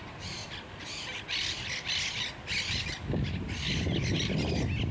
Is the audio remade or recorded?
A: recorded